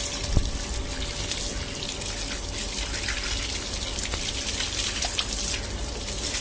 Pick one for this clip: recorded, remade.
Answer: recorded